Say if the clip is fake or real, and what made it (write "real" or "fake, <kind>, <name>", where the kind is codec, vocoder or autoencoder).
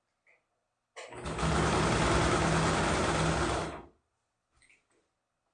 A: real